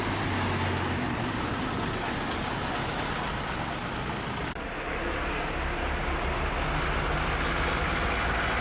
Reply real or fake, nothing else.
real